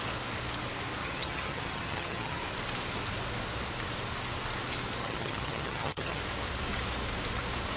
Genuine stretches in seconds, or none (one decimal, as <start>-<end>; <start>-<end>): 0.0-1.0; 2.4-5.0; 6.2-7.8